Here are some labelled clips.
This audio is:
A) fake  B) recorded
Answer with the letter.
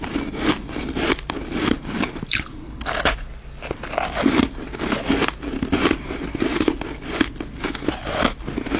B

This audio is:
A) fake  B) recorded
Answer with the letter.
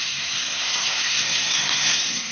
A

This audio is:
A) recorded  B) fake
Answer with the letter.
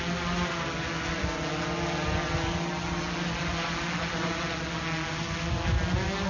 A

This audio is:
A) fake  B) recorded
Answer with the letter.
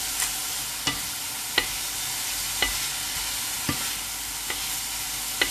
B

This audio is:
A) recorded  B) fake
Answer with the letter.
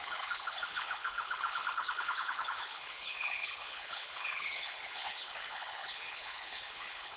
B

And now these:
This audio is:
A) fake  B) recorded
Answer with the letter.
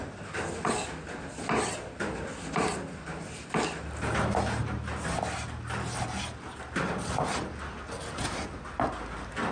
B